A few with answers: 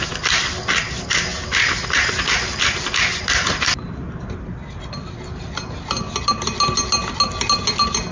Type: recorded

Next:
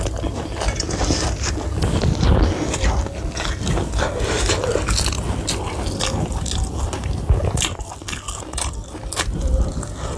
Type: recorded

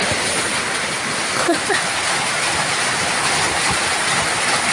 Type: recorded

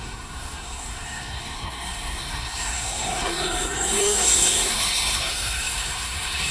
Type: remade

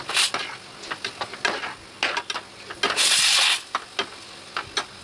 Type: recorded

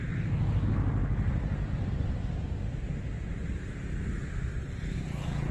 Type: recorded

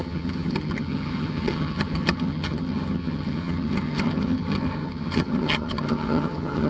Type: remade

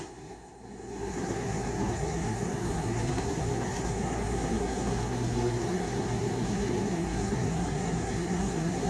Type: remade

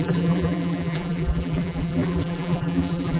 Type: remade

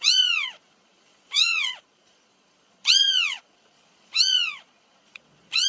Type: remade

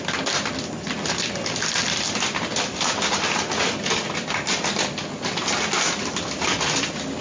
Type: recorded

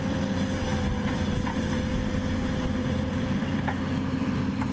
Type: recorded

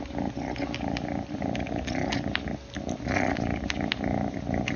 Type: recorded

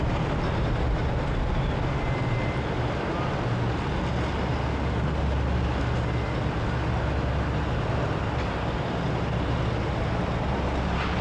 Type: recorded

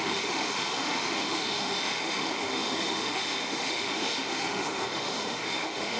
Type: remade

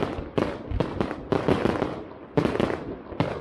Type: recorded